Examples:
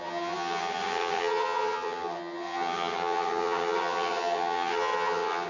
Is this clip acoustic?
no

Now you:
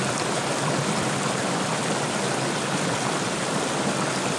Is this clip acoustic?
yes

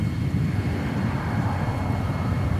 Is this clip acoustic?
yes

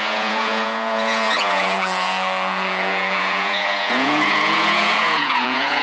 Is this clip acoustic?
no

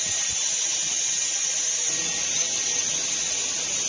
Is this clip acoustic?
no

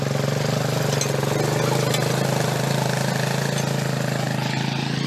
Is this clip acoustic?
yes